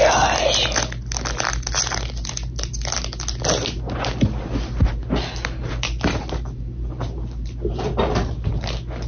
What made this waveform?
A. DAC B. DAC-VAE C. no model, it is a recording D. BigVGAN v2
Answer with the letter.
C